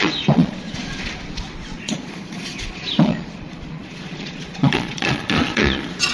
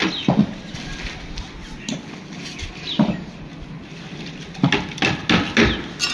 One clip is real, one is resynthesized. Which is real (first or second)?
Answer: second